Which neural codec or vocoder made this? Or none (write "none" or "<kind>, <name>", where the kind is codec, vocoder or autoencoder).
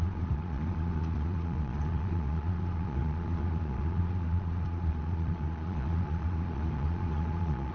vocoder, Vocos